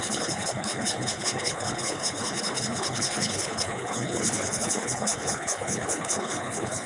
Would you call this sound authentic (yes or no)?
no